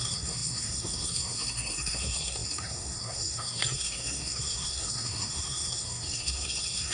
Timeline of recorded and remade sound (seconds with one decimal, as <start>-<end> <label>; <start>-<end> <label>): 0.0-6.9 remade